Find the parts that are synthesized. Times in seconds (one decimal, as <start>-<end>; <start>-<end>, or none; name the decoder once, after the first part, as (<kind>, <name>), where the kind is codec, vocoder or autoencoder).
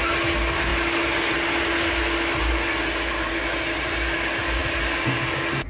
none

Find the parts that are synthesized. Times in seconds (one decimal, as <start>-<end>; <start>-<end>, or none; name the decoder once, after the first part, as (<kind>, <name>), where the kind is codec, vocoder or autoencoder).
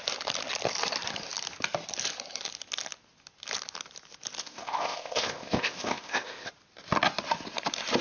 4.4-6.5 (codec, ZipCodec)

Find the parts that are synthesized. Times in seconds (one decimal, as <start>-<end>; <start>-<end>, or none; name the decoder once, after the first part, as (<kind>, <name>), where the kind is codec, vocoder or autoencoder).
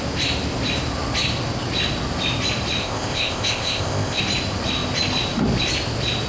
2.8-4.2 (codec, ZipCodec)